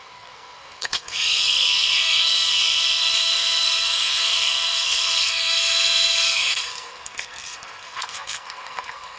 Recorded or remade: remade